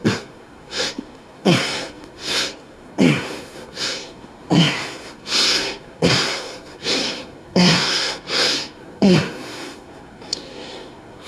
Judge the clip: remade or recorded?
remade